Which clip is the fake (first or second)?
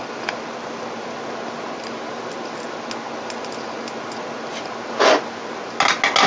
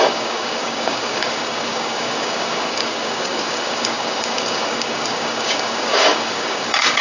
second